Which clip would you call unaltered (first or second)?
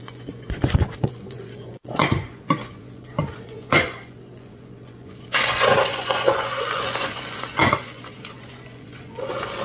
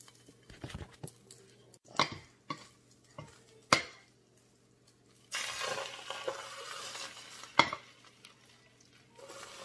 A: second